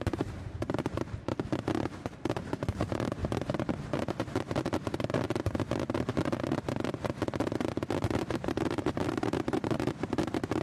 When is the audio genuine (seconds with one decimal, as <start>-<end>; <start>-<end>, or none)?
1.3-2.4; 3.2-8.3